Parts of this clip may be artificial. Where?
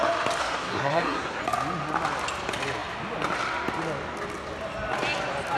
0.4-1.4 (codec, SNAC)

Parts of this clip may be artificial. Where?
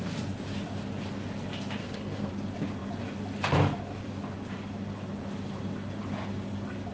1.8-2.3 (codec, SNAC)